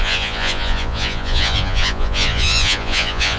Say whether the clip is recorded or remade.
remade